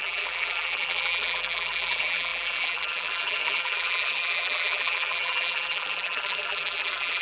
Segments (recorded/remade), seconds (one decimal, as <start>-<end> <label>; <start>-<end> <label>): 0.0-7.2 remade